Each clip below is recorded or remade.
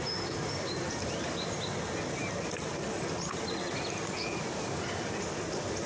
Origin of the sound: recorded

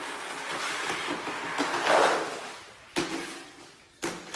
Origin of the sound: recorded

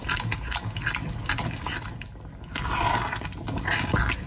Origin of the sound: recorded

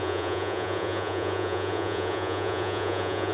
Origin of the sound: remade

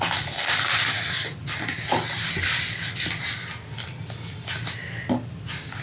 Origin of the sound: recorded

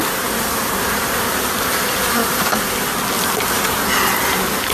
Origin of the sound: recorded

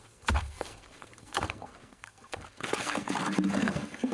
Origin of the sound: remade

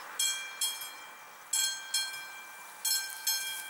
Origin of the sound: recorded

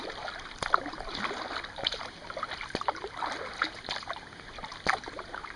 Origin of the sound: recorded